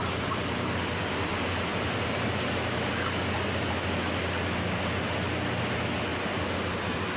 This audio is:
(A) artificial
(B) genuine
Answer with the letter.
B